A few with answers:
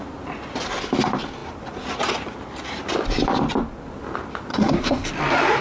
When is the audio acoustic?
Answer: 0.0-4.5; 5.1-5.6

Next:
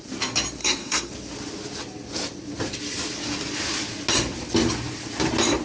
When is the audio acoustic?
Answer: 0.0-0.6; 1.1-5.6

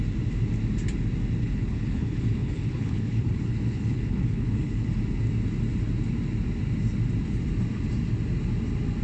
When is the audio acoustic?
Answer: 0.0-1.4; 4.9-9.0

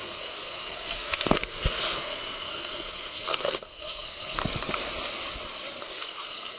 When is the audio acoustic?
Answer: 4.4-5.8

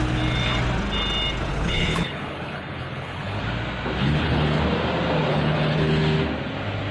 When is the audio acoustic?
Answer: 0.0-1.5; 3.4-4.0; 4.6-5.3; 6.0-6.9

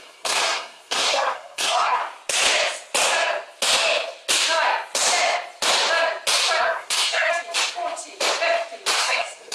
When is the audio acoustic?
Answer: 2.0-6.6; 7.3-9.0

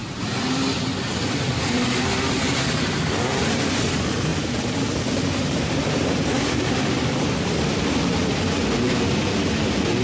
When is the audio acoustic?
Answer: 0.0-0.5; 4.3-6.6